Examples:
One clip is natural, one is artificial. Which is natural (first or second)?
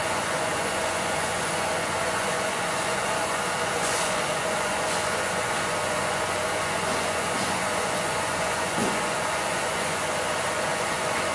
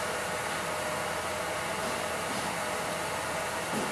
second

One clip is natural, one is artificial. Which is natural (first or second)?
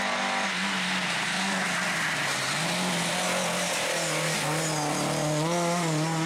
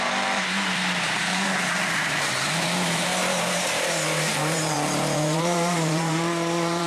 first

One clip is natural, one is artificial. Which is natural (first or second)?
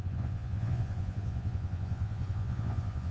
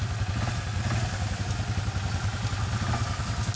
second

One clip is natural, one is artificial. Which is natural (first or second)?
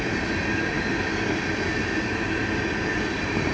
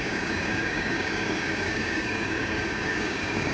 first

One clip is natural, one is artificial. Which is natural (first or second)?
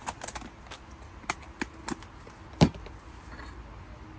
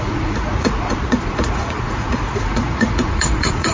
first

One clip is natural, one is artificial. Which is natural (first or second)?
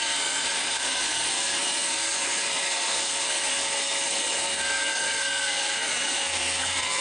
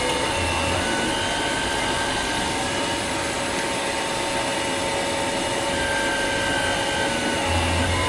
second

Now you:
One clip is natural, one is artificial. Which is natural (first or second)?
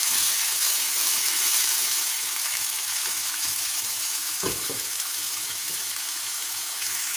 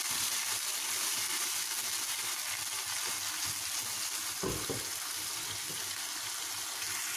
second